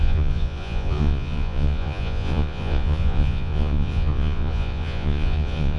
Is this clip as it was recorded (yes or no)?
no